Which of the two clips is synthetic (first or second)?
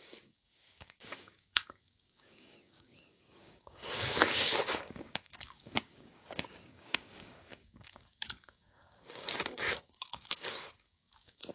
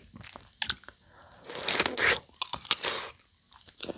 first